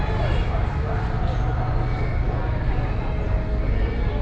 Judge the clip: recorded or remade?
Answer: recorded